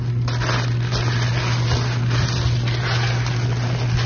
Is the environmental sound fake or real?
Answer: real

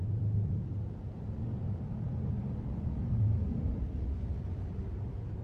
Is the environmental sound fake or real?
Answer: real